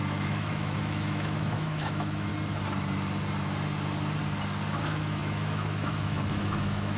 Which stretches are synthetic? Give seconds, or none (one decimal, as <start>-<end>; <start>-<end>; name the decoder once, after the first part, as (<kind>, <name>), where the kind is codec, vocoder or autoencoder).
0.0-2.3 (autoencoder, DAC-VAE); 4.8-7.0